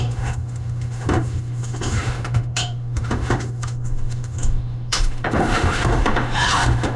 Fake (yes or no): yes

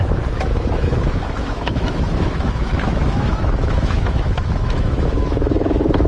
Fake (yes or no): yes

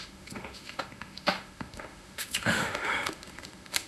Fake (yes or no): yes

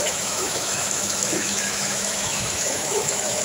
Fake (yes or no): yes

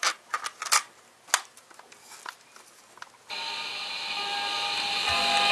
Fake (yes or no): no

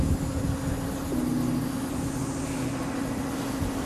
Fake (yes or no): no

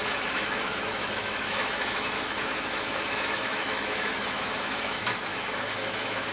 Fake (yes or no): yes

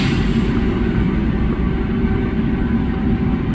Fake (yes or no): no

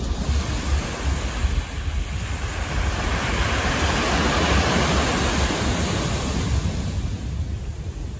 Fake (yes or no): no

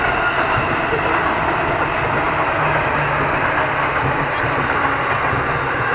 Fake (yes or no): no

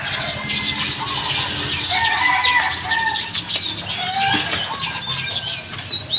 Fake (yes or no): no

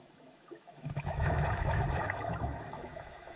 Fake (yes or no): yes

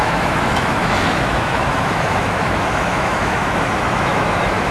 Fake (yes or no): yes